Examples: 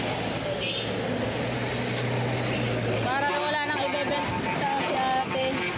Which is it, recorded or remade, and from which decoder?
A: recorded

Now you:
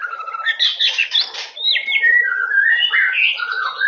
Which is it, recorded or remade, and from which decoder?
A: recorded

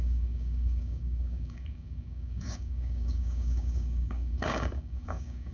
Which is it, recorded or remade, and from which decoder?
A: remade, codec, DAC